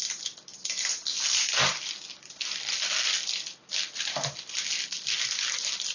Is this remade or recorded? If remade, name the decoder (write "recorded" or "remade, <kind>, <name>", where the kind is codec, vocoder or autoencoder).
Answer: recorded